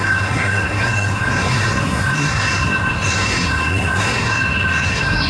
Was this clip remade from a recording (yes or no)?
yes